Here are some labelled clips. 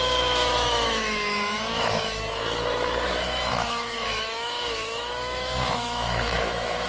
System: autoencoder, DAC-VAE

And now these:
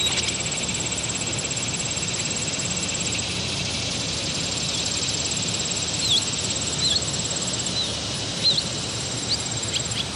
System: none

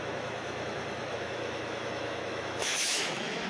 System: autoencoder, DAC-VAE